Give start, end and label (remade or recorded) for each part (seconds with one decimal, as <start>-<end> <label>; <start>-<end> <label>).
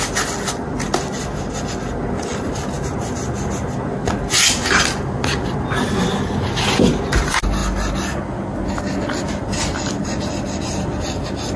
0.0-11.6 recorded